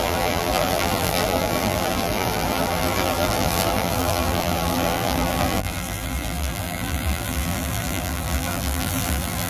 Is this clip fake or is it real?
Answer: fake